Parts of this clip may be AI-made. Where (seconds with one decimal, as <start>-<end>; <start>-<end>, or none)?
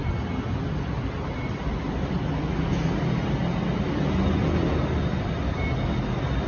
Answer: none